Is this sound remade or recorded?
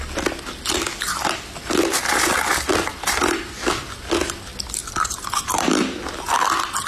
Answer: recorded